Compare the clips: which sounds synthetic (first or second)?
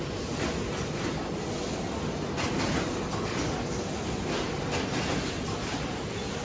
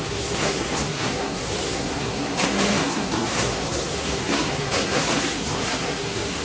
second